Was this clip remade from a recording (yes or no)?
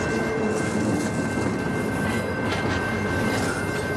no